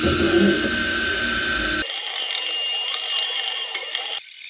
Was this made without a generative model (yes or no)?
yes